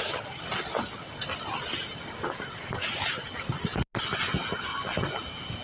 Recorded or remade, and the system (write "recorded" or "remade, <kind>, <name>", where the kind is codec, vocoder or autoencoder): recorded